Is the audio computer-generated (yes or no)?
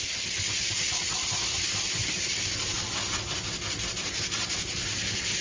no